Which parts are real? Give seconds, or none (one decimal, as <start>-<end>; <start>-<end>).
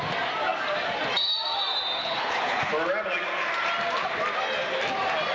0.0-2.0; 2.7-5.3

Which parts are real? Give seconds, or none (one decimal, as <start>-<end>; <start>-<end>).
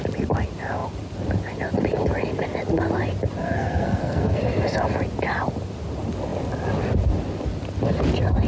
0.0-3.4; 4.4-8.5